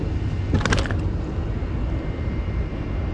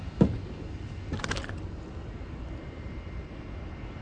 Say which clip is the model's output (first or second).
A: second